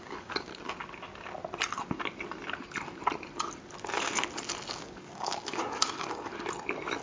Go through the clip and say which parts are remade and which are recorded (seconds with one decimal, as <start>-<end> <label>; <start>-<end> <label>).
0.0-0.5 remade; 0.5-4.7 recorded; 4.7-6.3 remade; 6.3-7.0 recorded